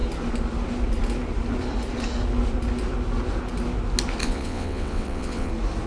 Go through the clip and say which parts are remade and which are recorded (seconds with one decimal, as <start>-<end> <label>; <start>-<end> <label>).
0.0-4.2 recorded; 4.2-5.5 remade; 5.5-5.9 recorded